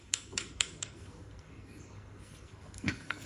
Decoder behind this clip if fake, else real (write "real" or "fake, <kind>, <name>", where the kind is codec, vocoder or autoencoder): fake, codec, SNAC